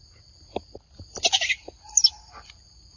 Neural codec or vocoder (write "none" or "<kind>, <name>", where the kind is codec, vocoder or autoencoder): none